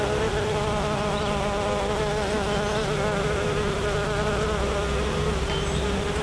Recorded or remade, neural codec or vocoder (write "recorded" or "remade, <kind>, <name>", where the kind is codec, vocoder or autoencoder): recorded